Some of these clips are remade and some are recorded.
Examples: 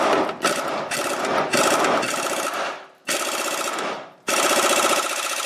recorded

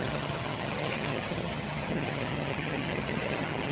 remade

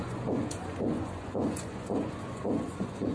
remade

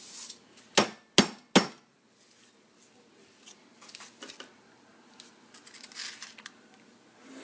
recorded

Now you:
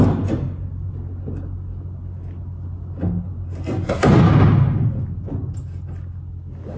recorded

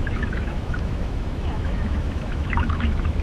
remade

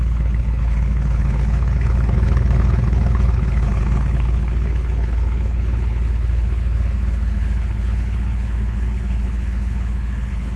remade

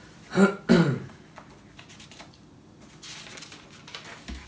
recorded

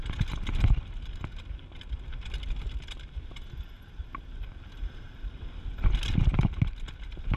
recorded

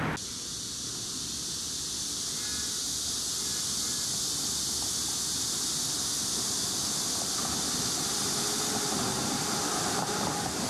recorded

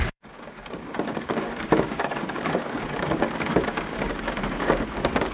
remade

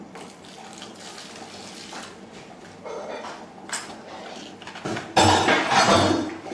recorded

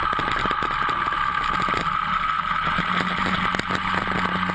recorded